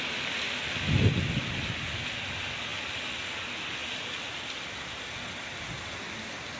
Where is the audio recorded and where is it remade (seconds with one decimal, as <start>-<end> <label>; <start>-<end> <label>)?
0.0-6.6 recorded